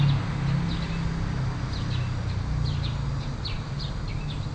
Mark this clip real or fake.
real